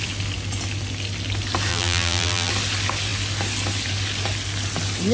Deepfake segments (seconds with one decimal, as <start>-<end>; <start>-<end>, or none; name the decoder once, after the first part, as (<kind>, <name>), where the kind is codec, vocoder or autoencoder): 1.7-2.5 (vocoder, BigVGAN v2)